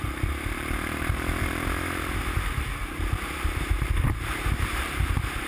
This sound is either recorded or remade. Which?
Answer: remade